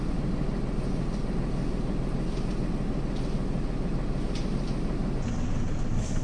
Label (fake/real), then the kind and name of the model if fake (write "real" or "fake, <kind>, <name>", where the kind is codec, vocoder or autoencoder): real